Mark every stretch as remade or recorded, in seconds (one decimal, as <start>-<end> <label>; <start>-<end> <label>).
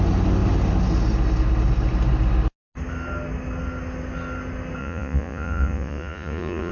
0.0-4.8 recorded; 4.8-6.7 remade